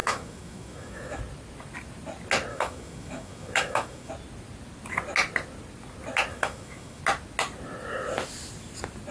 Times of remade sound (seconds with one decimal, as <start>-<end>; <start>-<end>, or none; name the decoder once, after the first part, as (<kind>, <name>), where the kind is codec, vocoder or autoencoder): 0.0-1.2 (autoencoder, DAC-VAE); 2.5-4.1; 6.3-7.0